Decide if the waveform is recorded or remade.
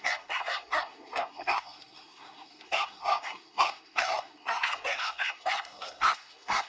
remade